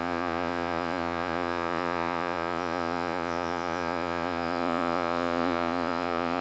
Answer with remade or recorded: remade